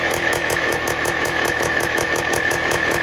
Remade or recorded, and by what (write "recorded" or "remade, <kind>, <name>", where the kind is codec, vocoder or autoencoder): remade, autoencoder, DAC-VAE